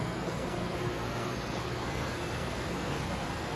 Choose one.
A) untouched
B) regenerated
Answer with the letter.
B